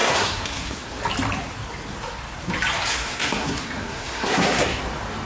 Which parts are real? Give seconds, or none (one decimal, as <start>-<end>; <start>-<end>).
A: 1.0-2.9; 4.8-5.3